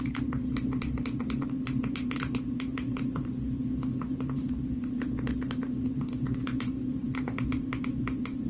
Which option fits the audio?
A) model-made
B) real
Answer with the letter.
A